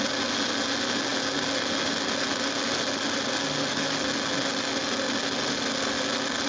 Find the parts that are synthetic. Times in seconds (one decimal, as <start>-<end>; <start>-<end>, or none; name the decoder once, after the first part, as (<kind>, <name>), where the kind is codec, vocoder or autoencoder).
none